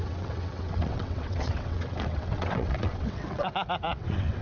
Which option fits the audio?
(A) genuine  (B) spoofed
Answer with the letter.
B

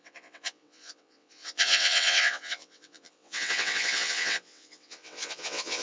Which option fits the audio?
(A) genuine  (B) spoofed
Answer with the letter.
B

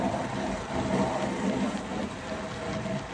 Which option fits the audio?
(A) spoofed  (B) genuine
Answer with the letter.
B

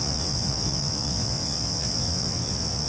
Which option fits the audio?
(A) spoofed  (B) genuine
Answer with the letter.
A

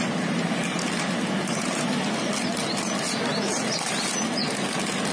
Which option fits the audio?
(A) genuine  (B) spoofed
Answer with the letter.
A